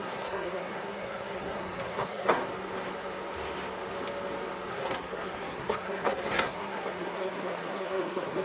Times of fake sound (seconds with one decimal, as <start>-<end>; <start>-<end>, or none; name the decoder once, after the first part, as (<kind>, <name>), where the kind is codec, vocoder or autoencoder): 0.0-2.4 (codec, SNAC); 4.7-8.4